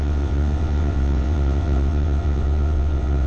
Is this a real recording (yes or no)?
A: no